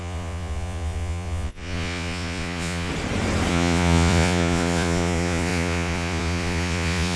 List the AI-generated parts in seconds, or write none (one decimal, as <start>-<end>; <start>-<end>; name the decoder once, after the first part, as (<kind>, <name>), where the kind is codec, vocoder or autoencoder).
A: 0.0-2.9 (vocoder, Vocos); 3.5-7.2